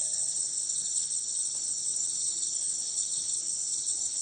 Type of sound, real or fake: fake